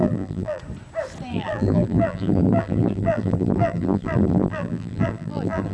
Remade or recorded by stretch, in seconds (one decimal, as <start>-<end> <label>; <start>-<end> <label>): 0.0-0.6 remade; 0.6-1.3 recorded; 1.3-5.7 remade